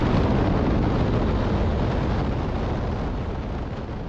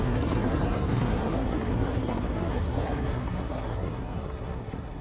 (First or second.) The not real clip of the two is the second